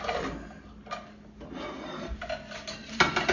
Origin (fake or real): real